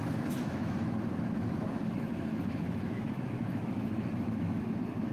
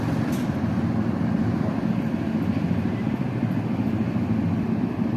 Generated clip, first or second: first